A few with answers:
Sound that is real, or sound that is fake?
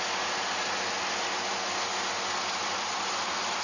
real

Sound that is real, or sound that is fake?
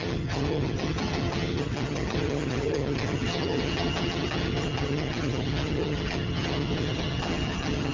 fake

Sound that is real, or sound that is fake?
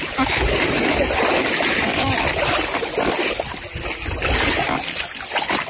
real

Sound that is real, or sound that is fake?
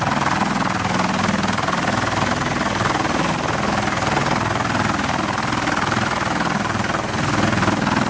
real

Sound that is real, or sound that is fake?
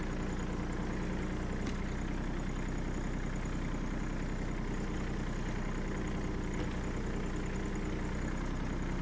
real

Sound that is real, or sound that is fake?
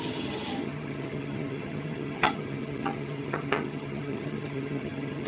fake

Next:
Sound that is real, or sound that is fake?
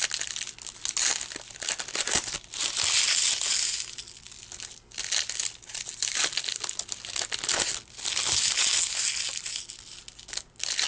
real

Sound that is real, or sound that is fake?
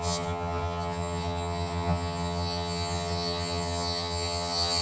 fake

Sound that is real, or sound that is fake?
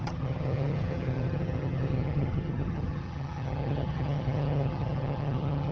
fake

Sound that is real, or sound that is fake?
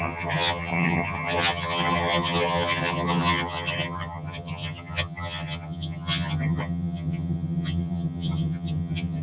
fake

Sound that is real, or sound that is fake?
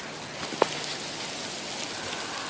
real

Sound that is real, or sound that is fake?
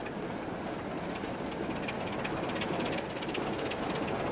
real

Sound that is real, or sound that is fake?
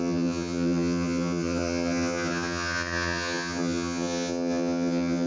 fake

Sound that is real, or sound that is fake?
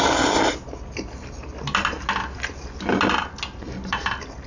real